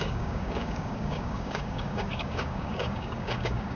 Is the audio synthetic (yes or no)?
yes